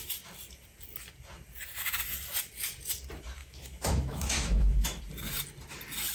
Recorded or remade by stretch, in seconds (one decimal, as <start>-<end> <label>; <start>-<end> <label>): 0.0-3.4 recorded; 3.4-5.0 remade; 5.0-6.1 recorded